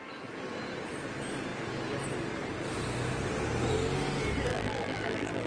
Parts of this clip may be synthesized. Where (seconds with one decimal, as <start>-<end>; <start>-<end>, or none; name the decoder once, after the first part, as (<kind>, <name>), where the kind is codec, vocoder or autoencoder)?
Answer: 4.5-5.5 (vocoder, BigVGAN v2)